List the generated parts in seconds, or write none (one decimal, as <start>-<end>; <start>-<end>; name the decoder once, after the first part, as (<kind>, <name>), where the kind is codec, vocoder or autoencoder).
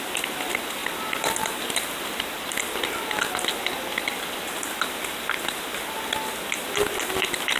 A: none